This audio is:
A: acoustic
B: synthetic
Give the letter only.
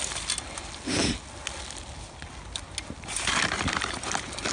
A